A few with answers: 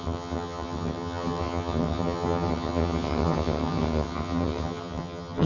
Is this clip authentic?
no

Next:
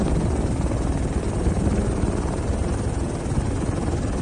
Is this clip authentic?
yes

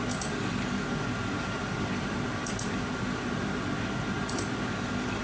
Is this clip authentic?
no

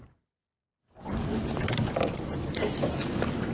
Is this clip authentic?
yes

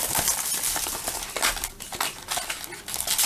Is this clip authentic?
yes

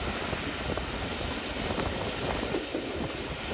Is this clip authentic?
yes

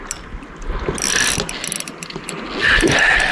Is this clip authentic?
yes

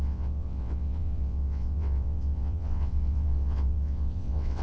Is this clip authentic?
no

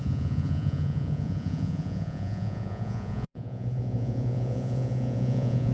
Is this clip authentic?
no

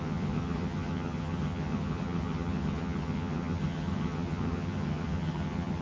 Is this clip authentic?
no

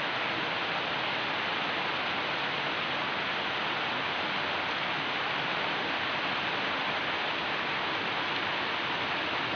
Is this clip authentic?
yes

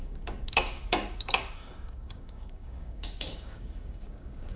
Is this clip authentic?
no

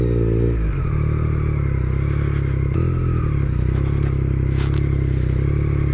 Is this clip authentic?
yes